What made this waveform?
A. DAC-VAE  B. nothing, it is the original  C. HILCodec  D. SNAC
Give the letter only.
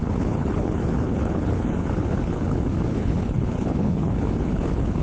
C